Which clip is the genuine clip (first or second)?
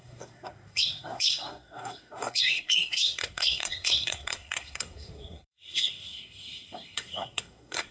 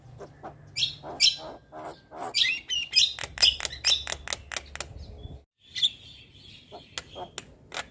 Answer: second